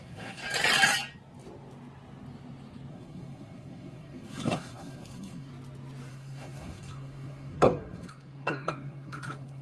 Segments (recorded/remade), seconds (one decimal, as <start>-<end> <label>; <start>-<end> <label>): 0.0-0.4 remade; 0.4-2.9 recorded; 2.9-5.5 remade; 5.5-6.1 recorded; 6.1-9.6 remade